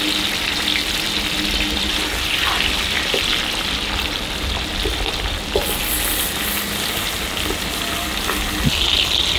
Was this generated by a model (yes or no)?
no